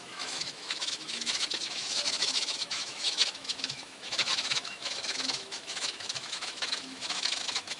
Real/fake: fake